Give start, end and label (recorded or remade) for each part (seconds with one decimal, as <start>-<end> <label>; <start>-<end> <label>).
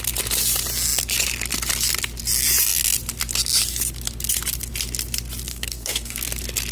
0.0-5.5 recorded; 5.5-6.3 remade; 6.3-6.7 recorded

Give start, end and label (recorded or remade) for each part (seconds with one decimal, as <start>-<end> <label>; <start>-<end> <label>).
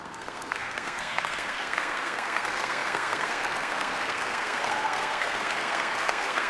0.0-6.5 remade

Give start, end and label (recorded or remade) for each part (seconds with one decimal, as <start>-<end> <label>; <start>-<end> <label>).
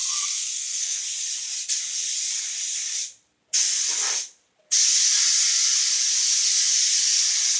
0.0-1.0 remade; 1.0-7.6 recorded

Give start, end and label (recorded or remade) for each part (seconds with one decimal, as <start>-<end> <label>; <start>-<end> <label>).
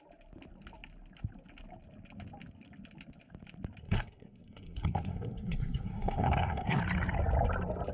0.0-3.8 recorded; 3.8-6.8 remade; 6.8-7.9 recorded